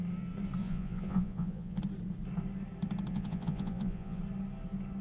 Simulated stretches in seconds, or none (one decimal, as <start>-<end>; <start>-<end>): 0.6-1.8; 3.1-4.2